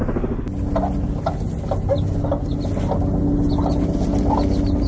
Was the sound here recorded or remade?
recorded